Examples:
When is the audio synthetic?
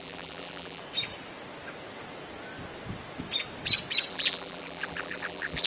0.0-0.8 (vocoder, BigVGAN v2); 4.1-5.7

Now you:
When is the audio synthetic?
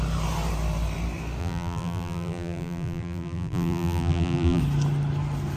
1.4-4.6 (vocoder, BigVGAN v2)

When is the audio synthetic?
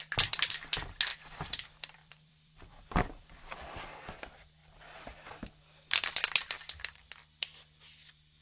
1.1-3.9 (vocoder, BigVGAN v2)